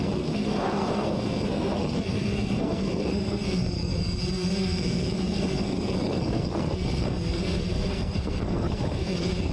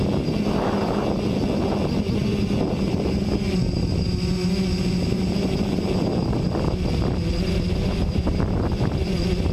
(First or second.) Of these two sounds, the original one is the second